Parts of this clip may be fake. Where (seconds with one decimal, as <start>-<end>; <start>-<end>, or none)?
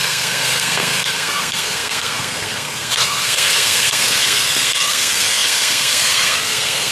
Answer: 0.0-6.9